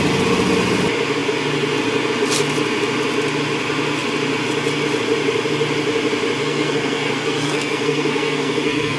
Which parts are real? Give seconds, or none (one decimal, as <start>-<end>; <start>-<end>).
0.0-6.4